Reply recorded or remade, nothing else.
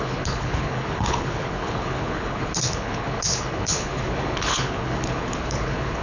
remade